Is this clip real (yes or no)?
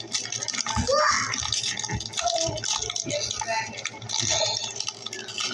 yes